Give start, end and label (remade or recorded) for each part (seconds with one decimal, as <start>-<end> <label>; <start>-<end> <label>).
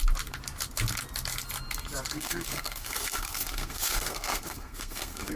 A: 0.0-2.1 recorded; 2.1-5.4 remade